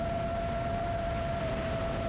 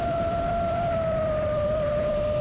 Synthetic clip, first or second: second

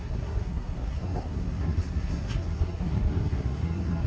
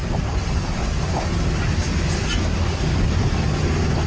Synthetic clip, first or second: first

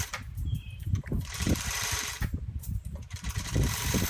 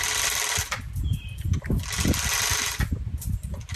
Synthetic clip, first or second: first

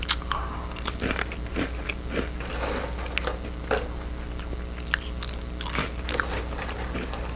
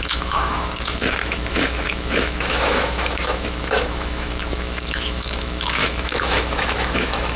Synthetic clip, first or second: second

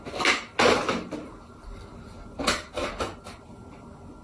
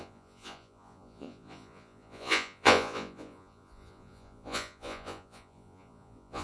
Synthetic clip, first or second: second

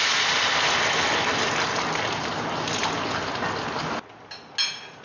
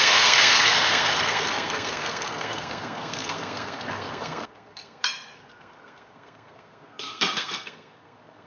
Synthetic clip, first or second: second